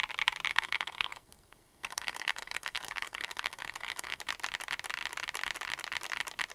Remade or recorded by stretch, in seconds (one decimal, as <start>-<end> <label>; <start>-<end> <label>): 0.0-0.5 recorded; 0.5-4.2 remade; 4.2-6.5 recorded